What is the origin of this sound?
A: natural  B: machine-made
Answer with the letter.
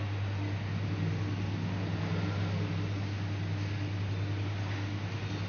A